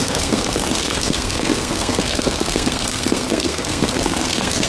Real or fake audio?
fake